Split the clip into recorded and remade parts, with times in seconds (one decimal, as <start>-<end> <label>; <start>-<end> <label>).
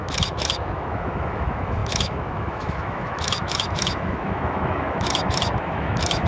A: 0.0-6.3 remade